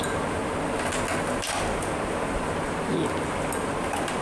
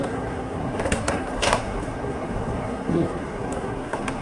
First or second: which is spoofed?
second